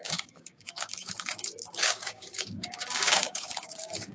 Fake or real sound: fake